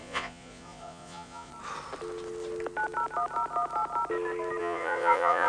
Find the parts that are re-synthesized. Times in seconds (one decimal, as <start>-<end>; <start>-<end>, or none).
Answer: 0.0-1.5; 4.6-5.5